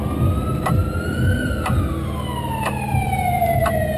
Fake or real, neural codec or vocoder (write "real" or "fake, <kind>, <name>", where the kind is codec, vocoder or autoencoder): real